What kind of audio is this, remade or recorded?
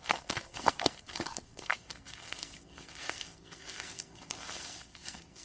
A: remade